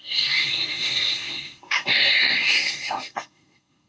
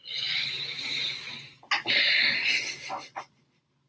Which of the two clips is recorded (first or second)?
second